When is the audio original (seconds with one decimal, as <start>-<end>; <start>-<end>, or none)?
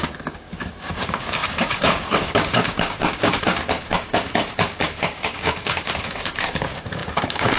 none